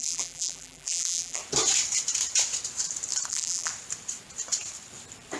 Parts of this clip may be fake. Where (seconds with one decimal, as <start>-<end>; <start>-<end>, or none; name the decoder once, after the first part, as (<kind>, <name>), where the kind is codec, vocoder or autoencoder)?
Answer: 0.0-1.4 (vocoder, BigVGAN v2); 3.3-3.7